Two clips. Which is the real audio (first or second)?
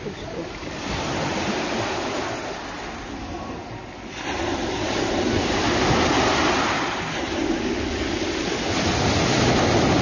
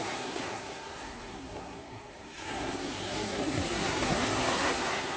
first